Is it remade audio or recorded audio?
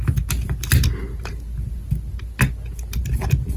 recorded